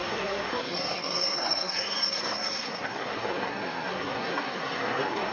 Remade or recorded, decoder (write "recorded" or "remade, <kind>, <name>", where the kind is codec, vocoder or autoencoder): remade, codec, SNAC